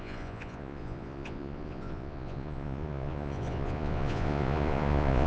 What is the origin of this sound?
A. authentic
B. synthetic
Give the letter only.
B